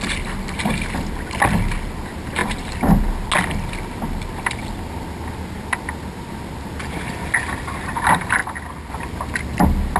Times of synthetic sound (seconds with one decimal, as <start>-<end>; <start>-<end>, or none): none